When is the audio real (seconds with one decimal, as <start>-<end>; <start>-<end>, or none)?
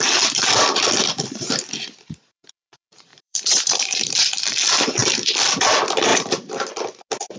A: 0.0-3.1; 4.1-6.1; 6.7-7.4